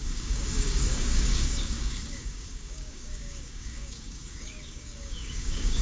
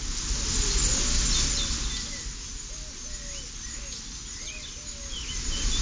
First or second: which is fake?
first